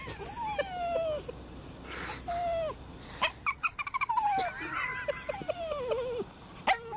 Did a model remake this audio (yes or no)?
no